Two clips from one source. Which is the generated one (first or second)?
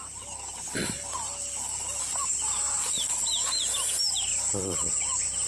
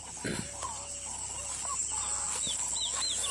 first